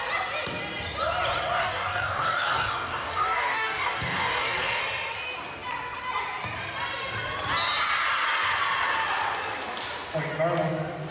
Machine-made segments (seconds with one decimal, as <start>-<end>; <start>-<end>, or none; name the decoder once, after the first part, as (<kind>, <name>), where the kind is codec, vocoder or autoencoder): 1.6-4.8 (codec, DAC)